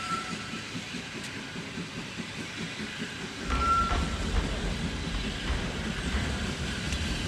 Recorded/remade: recorded